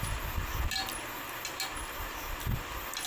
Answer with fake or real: real